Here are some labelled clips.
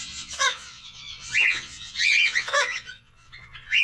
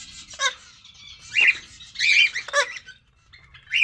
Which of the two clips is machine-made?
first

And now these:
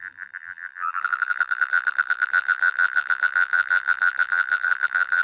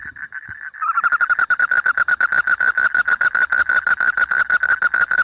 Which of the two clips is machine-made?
first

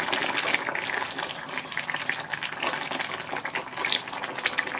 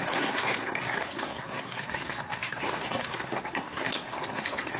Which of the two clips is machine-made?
second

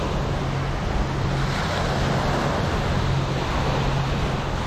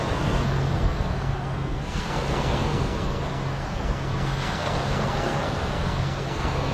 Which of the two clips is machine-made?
second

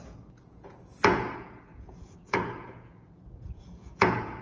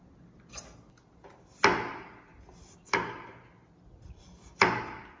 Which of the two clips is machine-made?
first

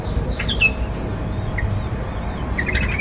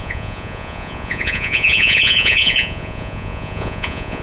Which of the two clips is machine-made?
second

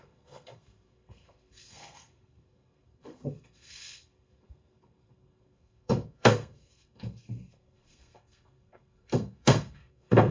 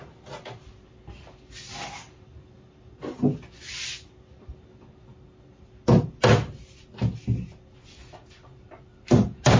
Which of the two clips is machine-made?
first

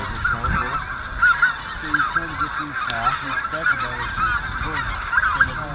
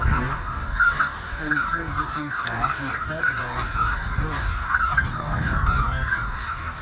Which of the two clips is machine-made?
second